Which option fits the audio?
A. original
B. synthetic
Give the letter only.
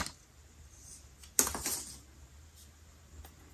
A